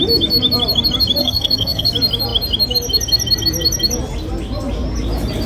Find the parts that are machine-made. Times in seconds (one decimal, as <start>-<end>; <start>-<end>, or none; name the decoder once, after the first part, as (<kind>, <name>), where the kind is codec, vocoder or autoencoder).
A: 1.2-1.9 (codec, SNAC)